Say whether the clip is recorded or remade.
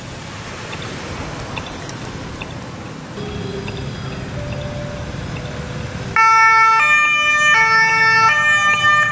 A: recorded